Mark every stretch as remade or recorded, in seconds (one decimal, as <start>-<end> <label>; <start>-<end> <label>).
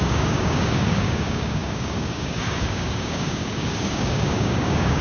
0.0-5.0 remade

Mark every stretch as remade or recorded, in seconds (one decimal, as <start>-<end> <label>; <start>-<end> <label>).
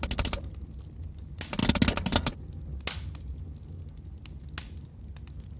0.0-5.6 recorded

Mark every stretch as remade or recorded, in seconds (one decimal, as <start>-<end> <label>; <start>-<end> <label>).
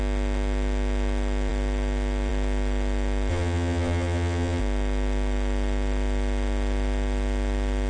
0.0-3.3 recorded; 3.3-4.6 remade; 4.6-7.9 recorded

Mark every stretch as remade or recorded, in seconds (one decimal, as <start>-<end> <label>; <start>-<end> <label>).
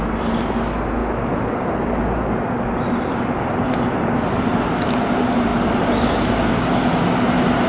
0.0-7.7 recorded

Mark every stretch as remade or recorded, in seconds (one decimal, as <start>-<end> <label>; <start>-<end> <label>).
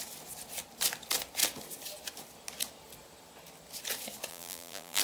0.0-4.3 recorded; 4.3-5.0 remade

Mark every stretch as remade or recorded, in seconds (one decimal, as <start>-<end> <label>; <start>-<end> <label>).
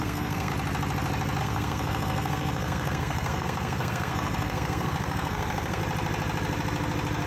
0.0-0.5 remade; 0.5-1.4 recorded; 1.4-5.8 remade; 5.8-7.3 recorded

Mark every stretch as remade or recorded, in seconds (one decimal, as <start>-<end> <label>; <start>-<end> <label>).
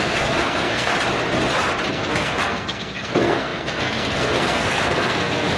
0.0-0.9 remade; 0.9-1.9 recorded; 1.9-5.6 remade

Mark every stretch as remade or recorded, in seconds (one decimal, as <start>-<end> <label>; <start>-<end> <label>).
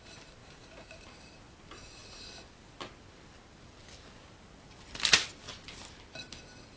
0.0-0.4 recorded; 0.4-1.0 remade; 1.0-6.8 recorded